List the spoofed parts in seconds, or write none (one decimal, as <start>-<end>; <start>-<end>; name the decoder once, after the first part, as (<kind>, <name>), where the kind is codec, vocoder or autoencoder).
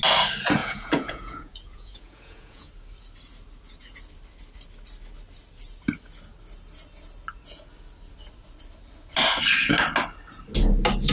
0.6-2.7 (vocoder, Vocos)